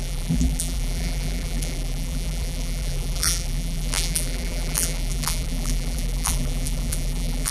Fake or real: fake